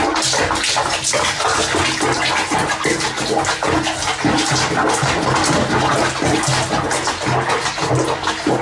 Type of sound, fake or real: real